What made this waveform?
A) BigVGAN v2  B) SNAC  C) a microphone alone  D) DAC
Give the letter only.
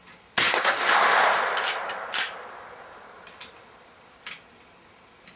C